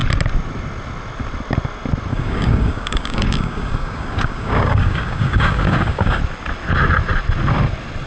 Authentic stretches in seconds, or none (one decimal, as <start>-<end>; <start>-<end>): 0.0-2.1; 6.2-8.1